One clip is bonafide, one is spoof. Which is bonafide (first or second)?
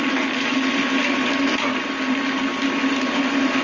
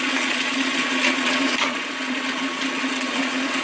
first